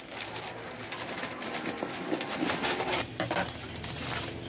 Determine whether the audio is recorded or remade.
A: recorded